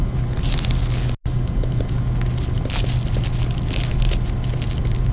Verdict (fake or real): real